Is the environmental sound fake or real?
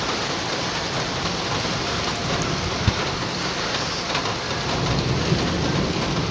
real